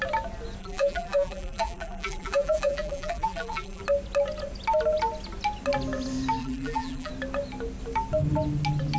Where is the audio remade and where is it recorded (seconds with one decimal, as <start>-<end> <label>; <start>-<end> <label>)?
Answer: 0.0-0.6 recorded; 0.6-3.8 remade; 3.8-6.4 recorded; 6.4-7.1 remade; 7.1-9.0 recorded